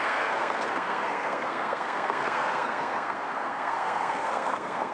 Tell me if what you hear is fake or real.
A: fake